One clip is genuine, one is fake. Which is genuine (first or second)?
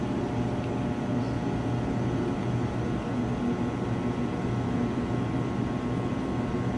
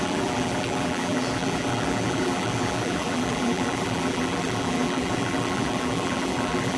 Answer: first